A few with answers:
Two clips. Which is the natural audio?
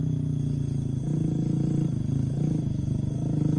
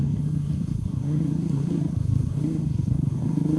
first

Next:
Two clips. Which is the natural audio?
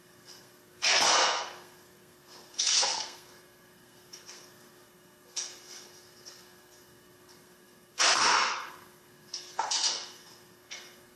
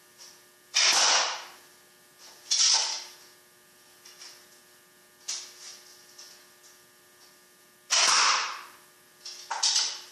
second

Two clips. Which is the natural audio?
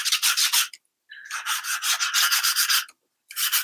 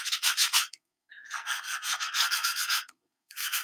first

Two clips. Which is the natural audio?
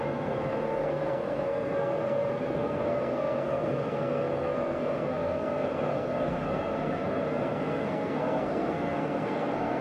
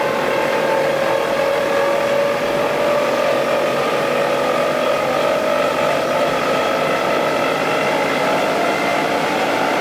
second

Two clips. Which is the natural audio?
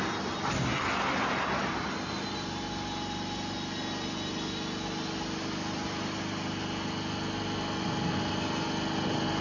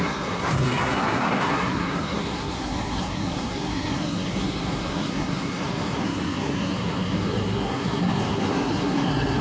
first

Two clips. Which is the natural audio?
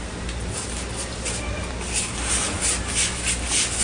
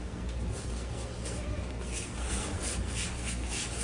first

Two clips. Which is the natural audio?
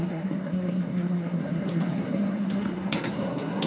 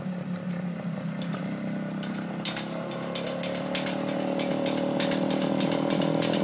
second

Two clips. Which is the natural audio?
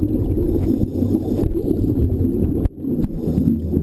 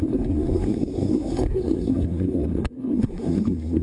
first